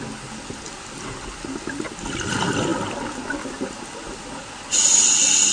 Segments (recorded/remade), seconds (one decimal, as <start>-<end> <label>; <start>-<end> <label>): 0.0-5.5 recorded